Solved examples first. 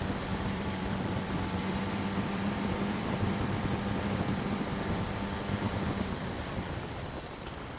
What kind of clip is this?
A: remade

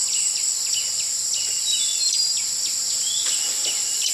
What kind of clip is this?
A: recorded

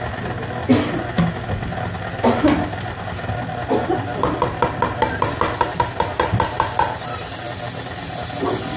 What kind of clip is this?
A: recorded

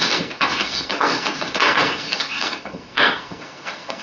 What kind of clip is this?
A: remade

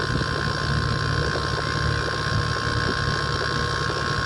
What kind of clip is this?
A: recorded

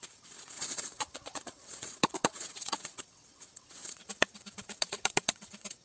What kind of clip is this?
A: remade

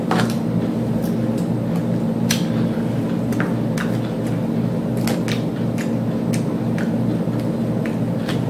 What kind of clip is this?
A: recorded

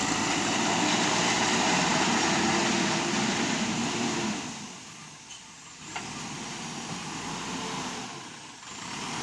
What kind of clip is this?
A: remade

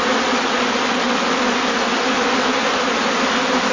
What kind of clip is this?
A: recorded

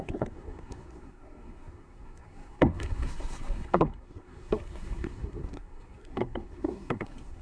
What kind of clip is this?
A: remade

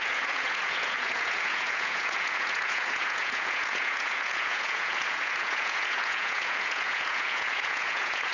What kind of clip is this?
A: remade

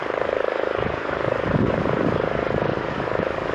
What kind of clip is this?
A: remade